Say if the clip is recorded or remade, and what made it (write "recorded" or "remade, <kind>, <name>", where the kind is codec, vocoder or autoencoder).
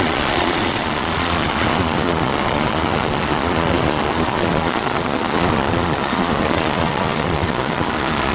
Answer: remade, vocoder, Vocos